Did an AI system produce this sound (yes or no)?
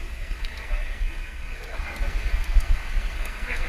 yes